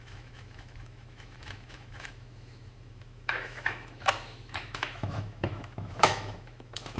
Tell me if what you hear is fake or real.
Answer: fake